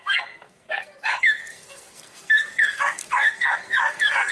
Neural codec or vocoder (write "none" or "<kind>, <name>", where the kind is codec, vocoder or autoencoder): codec, SNAC